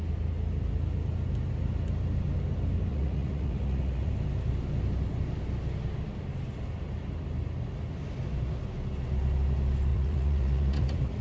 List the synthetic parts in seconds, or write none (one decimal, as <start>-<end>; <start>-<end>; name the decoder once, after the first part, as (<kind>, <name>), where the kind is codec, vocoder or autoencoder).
2.9-4.1 (vocoder, Vocos); 9.9-11.2